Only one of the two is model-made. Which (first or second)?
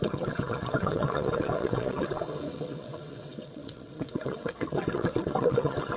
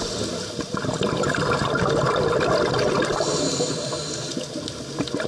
first